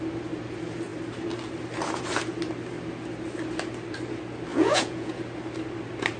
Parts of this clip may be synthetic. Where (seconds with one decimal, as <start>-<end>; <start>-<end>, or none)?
4.5-5.2